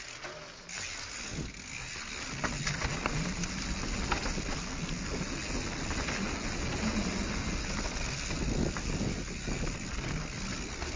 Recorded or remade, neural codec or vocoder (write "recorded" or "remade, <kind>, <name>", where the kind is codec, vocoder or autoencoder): recorded